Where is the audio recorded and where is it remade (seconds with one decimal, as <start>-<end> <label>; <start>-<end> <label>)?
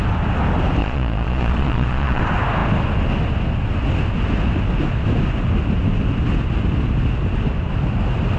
0.0-0.8 recorded; 0.8-2.2 remade; 2.2-8.4 recorded